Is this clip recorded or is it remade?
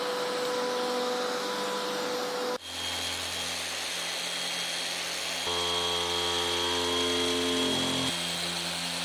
recorded